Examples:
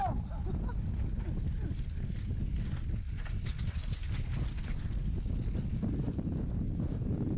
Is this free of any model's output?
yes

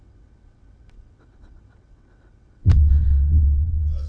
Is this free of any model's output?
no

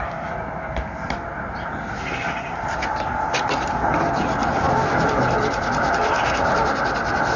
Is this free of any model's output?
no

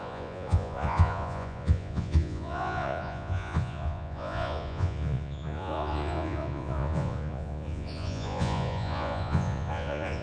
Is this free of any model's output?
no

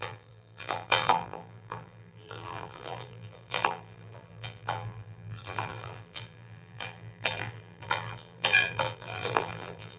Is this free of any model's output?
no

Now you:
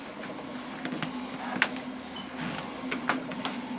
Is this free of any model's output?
yes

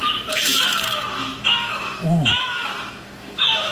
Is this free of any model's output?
no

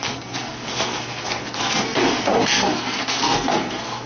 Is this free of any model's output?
no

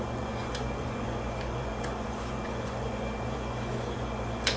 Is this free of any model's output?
no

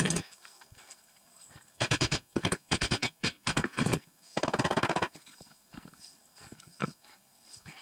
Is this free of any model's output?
no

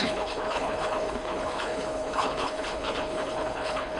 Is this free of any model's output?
no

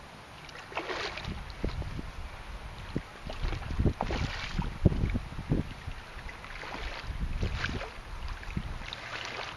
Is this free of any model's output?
yes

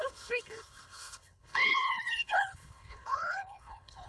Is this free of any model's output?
no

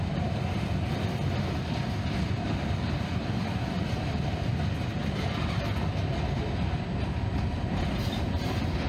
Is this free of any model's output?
yes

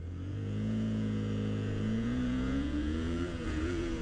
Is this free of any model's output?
no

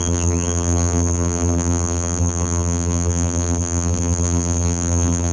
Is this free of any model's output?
no